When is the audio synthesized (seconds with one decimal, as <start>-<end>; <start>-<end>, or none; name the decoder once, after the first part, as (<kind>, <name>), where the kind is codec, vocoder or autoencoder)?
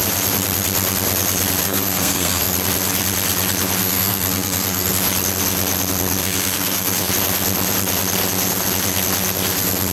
1.6-2.4 (codec, SNAC); 3.8-4.9; 6.2-7.1